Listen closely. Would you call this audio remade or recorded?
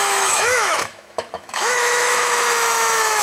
remade